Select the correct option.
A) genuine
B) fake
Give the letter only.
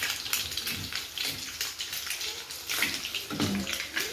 A